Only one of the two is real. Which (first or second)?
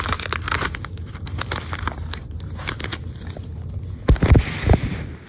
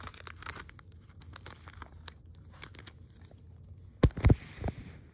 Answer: second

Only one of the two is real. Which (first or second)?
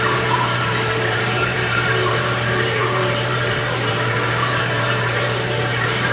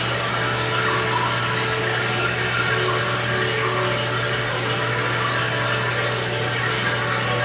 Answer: second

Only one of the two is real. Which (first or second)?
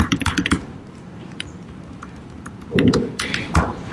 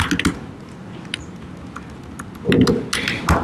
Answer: second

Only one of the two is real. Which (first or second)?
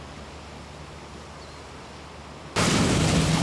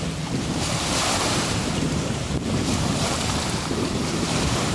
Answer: first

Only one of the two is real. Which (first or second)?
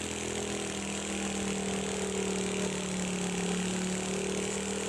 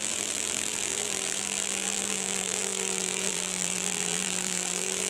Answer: first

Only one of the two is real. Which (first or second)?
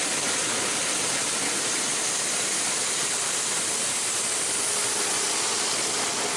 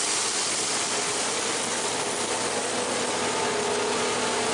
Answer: second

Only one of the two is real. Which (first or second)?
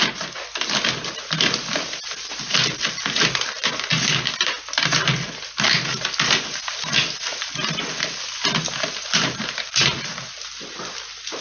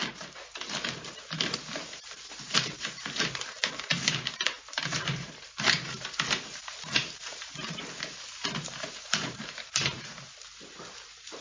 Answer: first